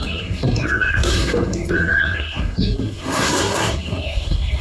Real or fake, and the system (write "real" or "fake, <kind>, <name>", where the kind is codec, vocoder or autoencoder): fake, codec, SNAC